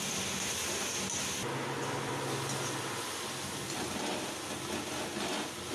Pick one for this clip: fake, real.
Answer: real